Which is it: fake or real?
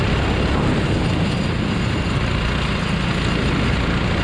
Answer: real